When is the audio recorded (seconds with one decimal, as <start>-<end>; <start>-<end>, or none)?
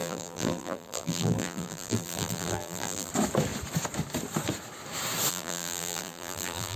3.1-5.3